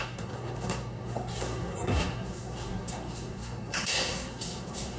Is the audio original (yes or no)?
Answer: no